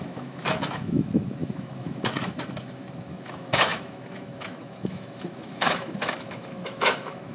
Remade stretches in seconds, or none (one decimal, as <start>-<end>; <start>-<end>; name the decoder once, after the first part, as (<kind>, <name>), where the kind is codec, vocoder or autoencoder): 0.0-7.3 (autoencoder, DAC-VAE)